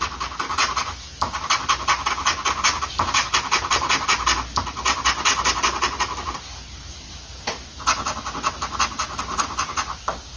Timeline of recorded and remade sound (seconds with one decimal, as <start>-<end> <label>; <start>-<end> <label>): 0.0-10.4 recorded

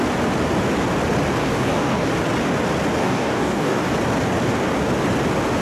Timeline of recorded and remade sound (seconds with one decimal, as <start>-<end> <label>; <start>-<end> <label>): 0.0-1.4 recorded; 1.4-2.1 remade; 2.1-3.0 recorded; 3.0-3.9 remade; 3.9-5.6 recorded

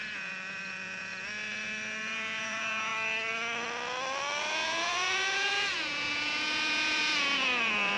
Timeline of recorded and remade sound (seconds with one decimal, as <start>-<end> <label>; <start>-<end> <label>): 0.0-2.9 remade; 2.9-4.4 recorded; 4.4-8.0 remade